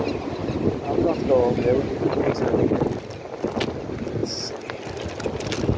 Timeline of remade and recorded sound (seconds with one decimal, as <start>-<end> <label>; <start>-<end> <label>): 0.0-5.8 recorded